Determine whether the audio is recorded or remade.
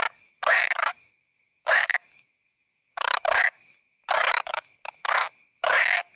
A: remade